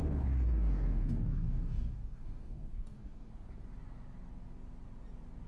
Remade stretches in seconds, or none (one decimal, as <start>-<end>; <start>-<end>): 0.0-3.3